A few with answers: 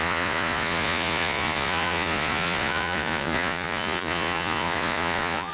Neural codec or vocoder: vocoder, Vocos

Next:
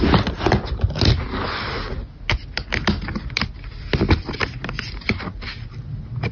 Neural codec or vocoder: none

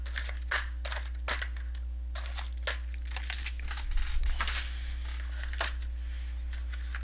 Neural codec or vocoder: none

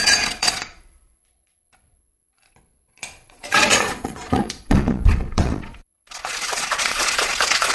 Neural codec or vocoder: vocoder, Vocos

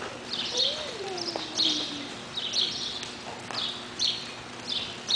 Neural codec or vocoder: none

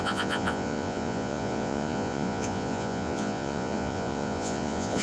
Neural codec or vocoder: vocoder, Vocos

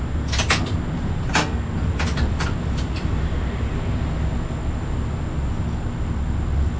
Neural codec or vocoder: none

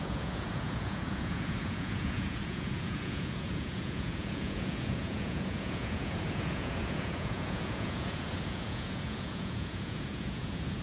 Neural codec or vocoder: vocoder, Vocos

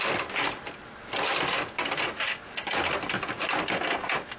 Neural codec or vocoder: none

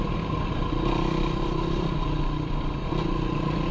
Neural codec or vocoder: none